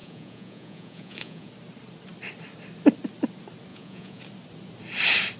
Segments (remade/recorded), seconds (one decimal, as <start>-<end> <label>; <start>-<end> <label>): 0.0-1.5 remade; 1.5-3.7 recorded; 3.7-4.2 remade; 4.2-5.4 recorded